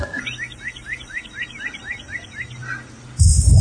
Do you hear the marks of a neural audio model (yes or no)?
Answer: no